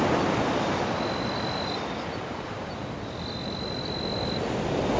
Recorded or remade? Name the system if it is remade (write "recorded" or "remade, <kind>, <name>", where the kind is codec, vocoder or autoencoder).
recorded